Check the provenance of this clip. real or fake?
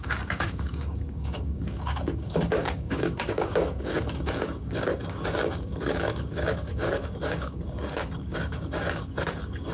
fake